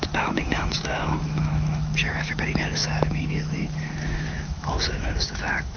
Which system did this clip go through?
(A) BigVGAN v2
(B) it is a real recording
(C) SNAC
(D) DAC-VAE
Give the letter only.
D